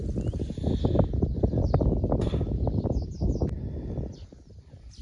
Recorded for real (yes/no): yes